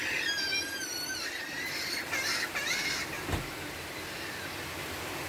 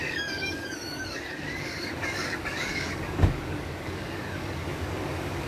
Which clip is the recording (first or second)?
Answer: first